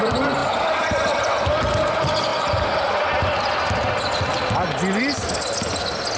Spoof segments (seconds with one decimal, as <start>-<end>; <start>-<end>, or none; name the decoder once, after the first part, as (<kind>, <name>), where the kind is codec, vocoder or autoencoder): 0.4-1.2 (vocoder, BigVGAN v2)